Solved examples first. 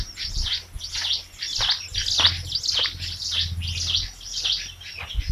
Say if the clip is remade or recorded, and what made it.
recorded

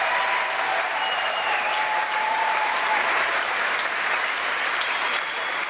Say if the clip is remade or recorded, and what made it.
remade, vocoder, BigVGAN v2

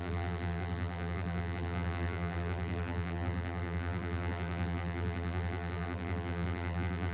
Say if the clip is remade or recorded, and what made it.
remade, vocoder, BigVGAN v2